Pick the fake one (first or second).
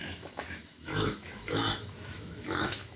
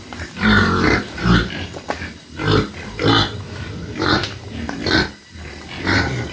first